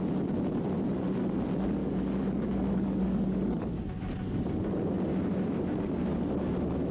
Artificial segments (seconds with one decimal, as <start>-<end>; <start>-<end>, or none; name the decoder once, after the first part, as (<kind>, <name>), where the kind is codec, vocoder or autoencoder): 1.8-3.8 (codec, DAC)